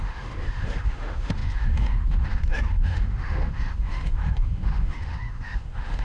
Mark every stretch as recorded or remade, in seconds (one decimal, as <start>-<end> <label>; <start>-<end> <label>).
0.0-6.0 remade